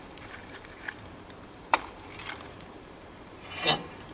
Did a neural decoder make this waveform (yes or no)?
yes